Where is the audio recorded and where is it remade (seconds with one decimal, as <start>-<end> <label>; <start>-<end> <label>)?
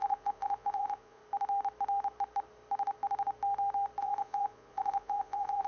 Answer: 0.0-1.2 remade; 1.2-4.0 recorded; 4.0-5.7 remade